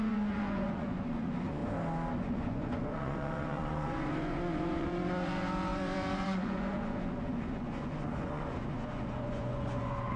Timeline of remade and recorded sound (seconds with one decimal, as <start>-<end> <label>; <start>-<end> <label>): 0.0-1.6 remade; 1.6-2.2 recorded; 2.2-10.2 remade